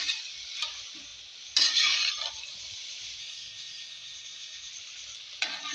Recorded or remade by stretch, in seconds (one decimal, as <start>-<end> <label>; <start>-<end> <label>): 0.0-3.2 recorded; 3.2-4.7 remade; 4.7-5.7 recorded